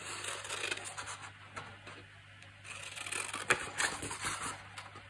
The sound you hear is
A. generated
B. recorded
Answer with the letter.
B